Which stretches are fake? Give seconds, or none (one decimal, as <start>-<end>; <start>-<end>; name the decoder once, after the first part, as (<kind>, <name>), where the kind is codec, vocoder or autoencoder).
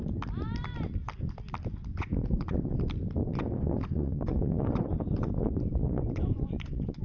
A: 1.9-2.8 (vocoder, Vocos); 3.2-7.0